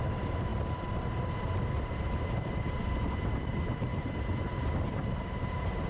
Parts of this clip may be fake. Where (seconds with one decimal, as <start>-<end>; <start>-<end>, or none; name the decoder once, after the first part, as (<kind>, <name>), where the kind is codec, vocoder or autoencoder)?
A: 0.0-5.9 (vocoder, BigVGAN v2)